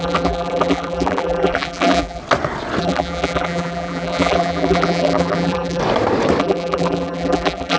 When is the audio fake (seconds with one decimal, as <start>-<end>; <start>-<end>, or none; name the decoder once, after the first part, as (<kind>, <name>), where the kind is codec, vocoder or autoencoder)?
0.0-2.2 (vocoder, BigVGAN v2); 2.8-5.8; 6.4-7.8